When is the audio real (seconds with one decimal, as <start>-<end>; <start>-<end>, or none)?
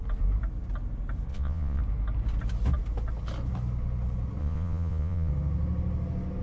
0.0-1.3; 1.8-4.4; 5.3-6.4